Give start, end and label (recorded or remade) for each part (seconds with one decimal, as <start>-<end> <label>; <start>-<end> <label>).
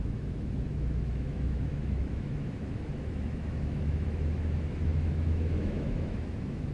0.0-6.7 remade